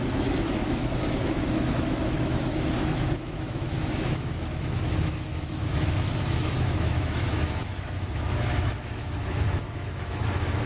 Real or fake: fake